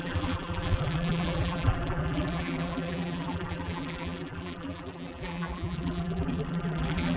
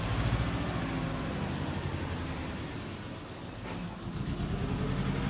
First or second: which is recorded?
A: second